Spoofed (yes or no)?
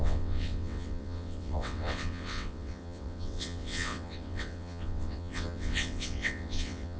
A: yes